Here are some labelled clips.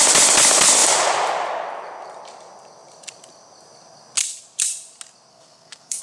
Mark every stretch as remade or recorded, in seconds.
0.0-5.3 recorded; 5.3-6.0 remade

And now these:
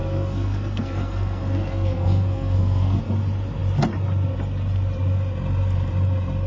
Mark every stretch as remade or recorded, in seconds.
0.0-3.0 remade; 3.0-6.5 recorded

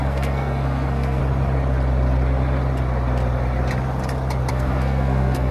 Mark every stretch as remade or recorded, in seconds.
0.0-1.2 remade; 1.2-4.5 recorded; 4.5-5.5 remade

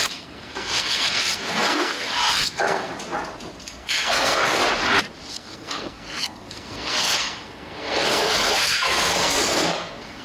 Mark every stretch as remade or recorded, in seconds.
0.0-2.9 remade; 2.9-3.6 recorded; 3.6-4.6 remade; 4.6-5.3 recorded; 5.3-10.2 remade